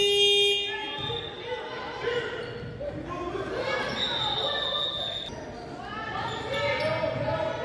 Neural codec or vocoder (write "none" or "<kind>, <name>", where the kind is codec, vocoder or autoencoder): none